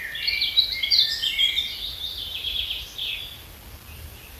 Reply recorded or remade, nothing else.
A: recorded